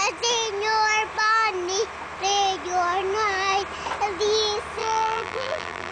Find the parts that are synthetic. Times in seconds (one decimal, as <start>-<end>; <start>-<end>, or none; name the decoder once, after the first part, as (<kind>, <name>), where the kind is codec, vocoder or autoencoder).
4.8-5.9 (vocoder, BigVGAN v2)